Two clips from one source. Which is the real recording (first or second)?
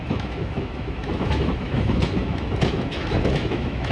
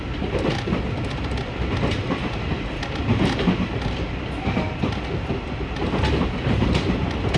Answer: second